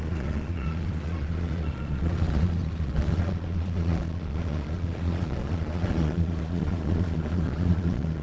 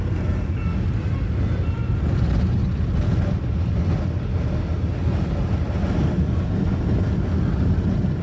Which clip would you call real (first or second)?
second